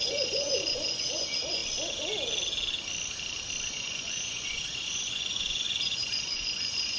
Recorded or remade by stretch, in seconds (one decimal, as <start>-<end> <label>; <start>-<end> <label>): 0.0-1.6 remade; 1.6-3.7 recorded; 3.7-7.0 remade